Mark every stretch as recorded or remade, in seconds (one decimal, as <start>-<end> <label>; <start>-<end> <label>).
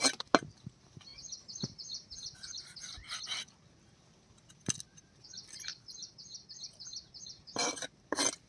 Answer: 0.0-8.5 recorded